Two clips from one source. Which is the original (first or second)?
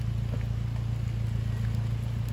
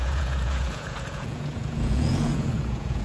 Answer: first